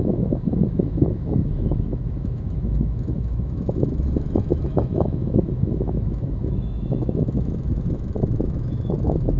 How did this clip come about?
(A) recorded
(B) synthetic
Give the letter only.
B